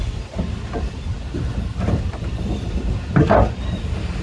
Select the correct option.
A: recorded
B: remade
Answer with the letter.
A